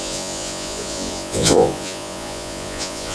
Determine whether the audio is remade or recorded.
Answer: remade